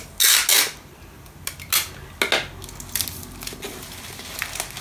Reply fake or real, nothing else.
real